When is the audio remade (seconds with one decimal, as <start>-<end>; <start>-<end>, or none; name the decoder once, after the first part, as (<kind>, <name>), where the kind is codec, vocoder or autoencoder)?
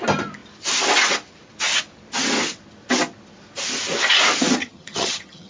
4.6-5.5 (vocoder, HiFi-GAN)